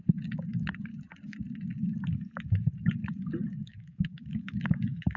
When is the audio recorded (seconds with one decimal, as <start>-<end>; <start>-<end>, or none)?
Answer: 0.0-3.7